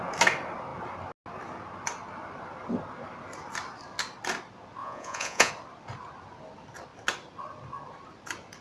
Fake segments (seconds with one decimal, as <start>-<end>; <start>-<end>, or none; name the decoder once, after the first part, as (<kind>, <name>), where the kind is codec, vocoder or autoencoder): 4.8-5.5 (vocoder, Vocos)